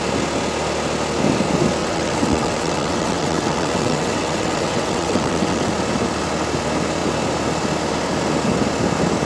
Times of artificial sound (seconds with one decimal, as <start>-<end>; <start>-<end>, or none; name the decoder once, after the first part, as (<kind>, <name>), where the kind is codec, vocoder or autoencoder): 1.8-5.7 (vocoder, WaveNeXt)